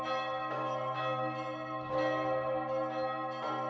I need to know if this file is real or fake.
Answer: real